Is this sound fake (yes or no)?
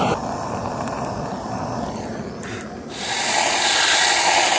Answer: no